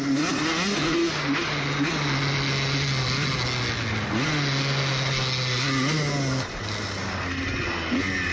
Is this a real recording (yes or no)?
yes